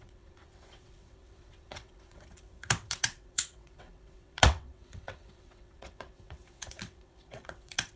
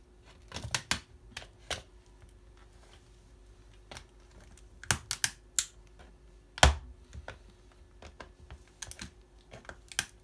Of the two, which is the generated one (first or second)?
first